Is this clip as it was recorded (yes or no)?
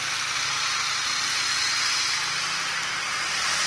yes